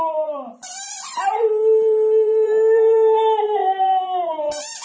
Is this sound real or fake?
fake